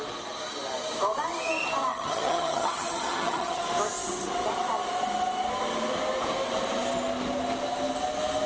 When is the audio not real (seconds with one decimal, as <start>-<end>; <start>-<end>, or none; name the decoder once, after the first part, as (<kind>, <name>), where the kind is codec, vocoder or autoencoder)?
1.9-3.6 (vocoder, HiFi-GAN)